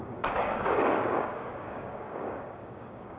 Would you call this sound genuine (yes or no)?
no